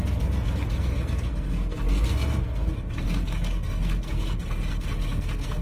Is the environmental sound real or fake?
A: fake